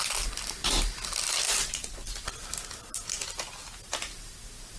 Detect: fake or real real